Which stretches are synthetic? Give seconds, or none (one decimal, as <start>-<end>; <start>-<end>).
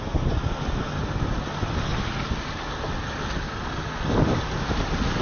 none